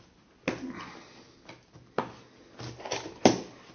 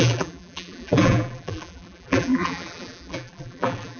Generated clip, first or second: second